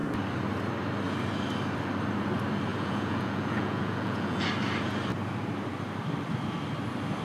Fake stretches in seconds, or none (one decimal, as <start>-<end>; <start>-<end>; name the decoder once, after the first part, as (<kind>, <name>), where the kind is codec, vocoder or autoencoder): 2.7-4.5 (vocoder, Vocos)